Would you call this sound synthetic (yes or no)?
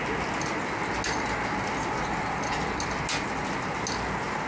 no